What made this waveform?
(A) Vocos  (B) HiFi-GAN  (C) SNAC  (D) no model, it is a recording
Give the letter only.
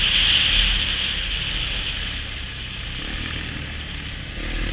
D